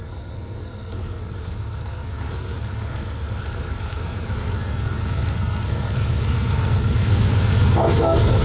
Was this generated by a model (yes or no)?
yes